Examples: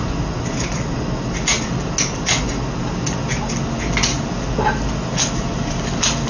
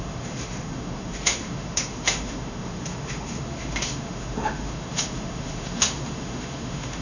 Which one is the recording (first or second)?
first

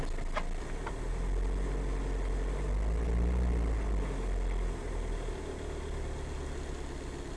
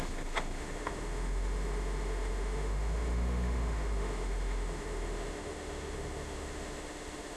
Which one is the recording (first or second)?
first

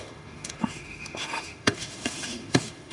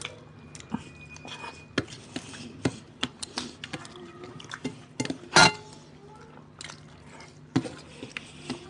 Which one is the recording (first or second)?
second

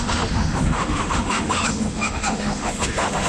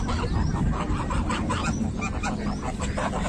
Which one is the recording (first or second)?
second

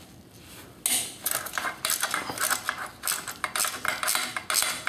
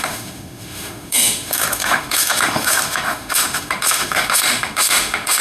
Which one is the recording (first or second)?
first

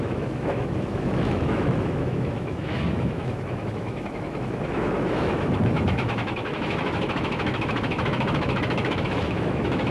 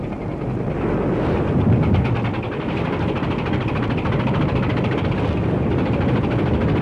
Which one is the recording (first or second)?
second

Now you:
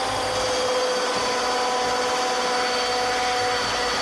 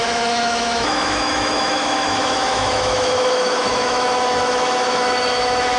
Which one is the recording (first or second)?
first